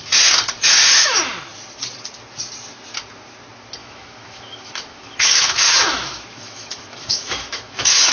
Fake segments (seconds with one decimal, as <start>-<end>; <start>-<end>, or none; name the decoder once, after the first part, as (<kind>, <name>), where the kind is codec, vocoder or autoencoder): 1.0-1.5 (autoencoder, DAC-VAE); 3.8-8.1